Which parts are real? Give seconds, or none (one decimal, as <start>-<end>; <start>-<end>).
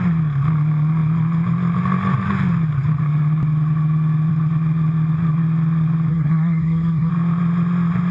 0.0-6.1; 7.1-8.1